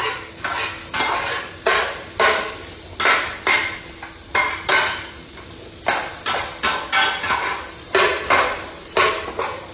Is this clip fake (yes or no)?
no